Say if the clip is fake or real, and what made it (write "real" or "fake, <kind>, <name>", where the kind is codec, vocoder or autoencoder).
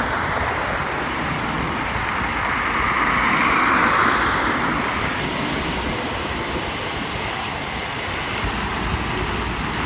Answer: real